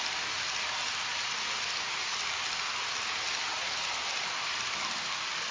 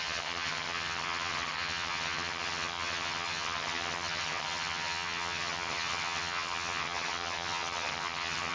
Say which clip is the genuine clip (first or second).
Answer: first